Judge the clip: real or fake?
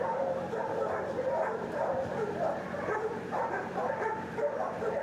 fake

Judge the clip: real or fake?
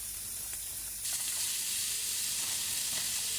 fake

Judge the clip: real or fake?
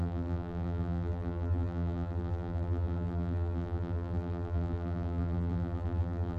fake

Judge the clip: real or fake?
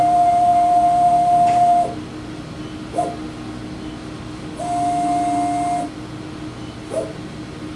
real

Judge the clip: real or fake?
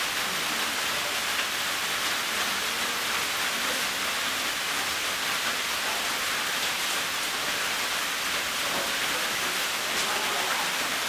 real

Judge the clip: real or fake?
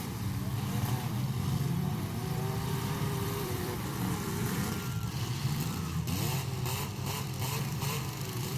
fake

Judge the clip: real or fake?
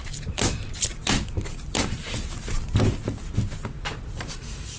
fake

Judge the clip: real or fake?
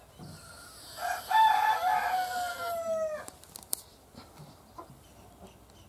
real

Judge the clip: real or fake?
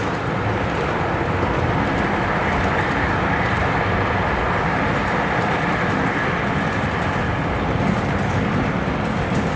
real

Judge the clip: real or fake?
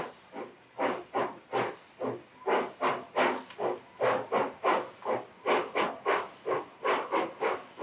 real